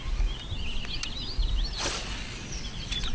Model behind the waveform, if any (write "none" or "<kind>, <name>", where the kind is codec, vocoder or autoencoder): none